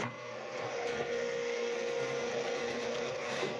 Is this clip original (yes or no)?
no